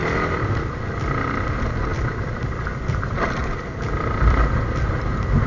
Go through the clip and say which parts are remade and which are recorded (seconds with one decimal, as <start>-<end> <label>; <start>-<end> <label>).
0.0-0.7 remade; 0.7-1.9 recorded; 1.9-5.1 remade; 5.1-5.5 recorded